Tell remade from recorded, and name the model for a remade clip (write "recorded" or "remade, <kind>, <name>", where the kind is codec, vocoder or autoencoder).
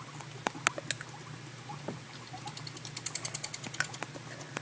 recorded